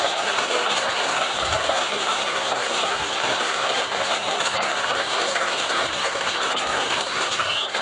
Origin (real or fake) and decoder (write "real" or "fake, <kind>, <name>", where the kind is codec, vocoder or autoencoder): fake, codec, SNAC